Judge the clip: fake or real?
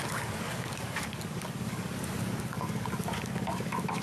fake